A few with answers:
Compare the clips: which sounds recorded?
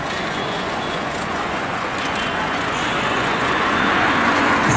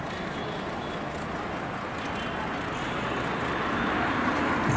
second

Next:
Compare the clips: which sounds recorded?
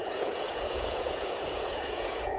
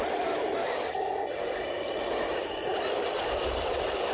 second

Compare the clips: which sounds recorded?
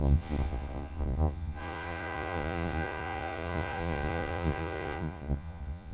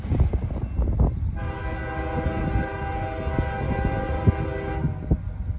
second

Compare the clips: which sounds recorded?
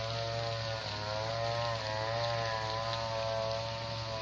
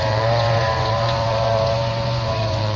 first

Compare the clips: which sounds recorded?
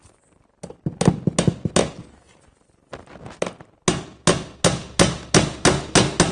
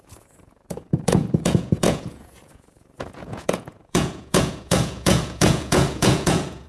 first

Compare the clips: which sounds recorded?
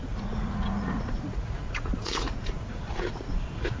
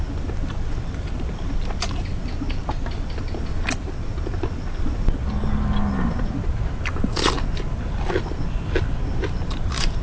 second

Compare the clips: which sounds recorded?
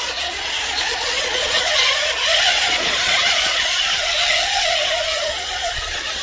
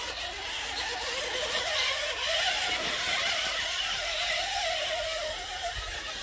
second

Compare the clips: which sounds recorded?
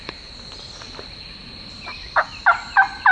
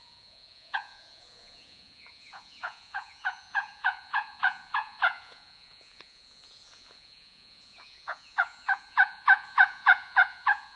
first